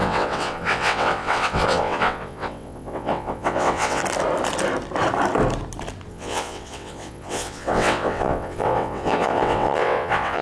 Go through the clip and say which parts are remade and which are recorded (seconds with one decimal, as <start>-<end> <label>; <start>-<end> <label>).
0.0-4.0 remade; 4.0-6.1 recorded; 6.1-10.4 remade